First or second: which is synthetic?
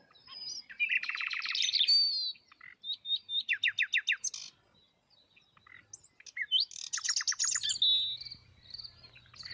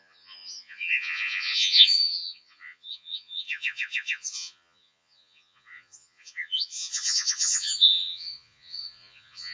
second